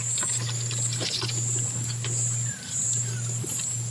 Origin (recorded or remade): recorded